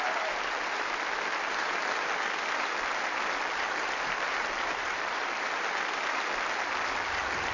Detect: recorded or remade recorded